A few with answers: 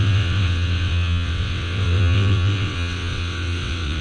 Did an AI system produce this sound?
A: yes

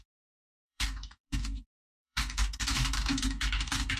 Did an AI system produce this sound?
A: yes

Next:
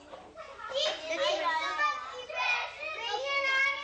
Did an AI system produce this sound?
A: no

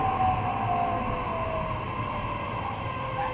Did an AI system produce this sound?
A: no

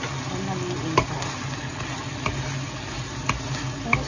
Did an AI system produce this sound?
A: no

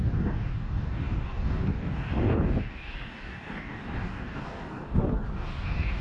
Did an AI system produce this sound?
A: yes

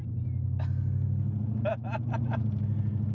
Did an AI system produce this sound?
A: no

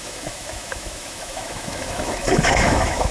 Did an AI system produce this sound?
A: yes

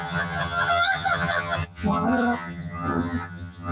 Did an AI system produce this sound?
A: yes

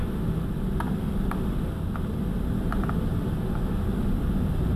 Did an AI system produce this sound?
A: no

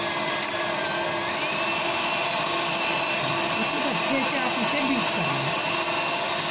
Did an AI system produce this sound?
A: no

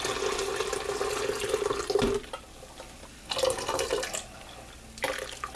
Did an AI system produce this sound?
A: no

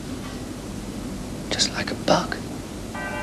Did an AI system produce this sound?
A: no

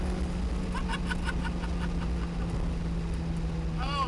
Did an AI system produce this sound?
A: no